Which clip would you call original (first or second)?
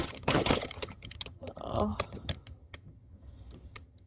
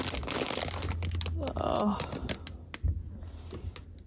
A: second